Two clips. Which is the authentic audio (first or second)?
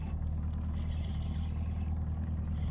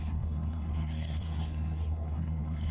first